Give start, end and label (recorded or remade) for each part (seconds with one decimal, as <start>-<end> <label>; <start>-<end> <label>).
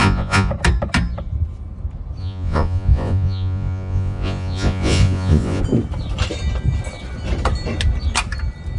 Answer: 0.0-0.5 remade; 0.5-2.2 recorded; 2.2-5.6 remade; 5.6-8.8 recorded